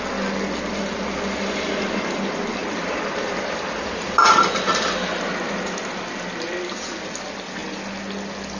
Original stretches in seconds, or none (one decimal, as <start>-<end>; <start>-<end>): 0.0-2.6; 4.4-8.6